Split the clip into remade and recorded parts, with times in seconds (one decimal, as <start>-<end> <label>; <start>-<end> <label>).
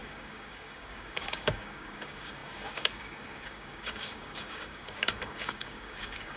0.0-6.4 remade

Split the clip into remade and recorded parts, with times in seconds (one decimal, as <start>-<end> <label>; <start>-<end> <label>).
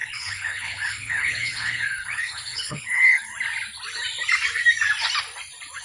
0.0-3.3 remade; 3.3-5.8 recorded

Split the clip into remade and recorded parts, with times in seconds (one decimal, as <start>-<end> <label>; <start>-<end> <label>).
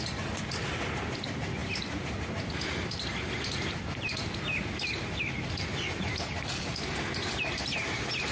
0.0-8.3 recorded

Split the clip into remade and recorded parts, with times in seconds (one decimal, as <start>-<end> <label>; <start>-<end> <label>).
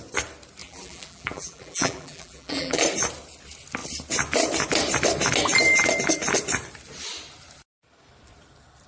0.0-0.6 recorded; 0.6-2.8 remade; 2.8-8.9 recorded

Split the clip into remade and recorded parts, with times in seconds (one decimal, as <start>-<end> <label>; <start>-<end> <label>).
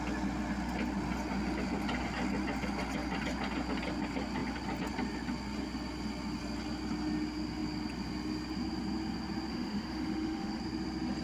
0.0-9.5 recorded; 9.5-10.6 remade; 10.6-11.2 recorded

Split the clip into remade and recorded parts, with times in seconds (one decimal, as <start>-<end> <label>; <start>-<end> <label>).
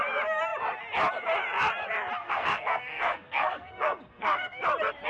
0.0-2.2 recorded; 2.2-4.6 remade; 4.6-5.1 recorded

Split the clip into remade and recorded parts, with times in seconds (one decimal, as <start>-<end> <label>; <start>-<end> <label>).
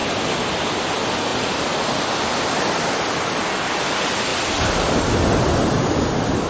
0.0-0.6 remade; 0.6-1.3 recorded; 1.3-3.5 remade; 3.5-6.5 recorded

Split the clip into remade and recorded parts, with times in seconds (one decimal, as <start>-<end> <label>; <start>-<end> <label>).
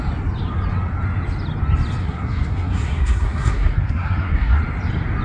0.0-2.0 recorded; 2.0-4.6 remade; 4.6-5.2 recorded